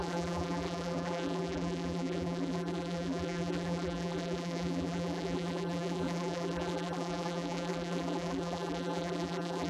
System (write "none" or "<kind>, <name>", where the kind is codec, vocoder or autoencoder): vocoder, BigVGAN v2